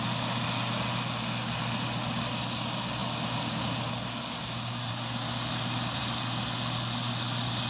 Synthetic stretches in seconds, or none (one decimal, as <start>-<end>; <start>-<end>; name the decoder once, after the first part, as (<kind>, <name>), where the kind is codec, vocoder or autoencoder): none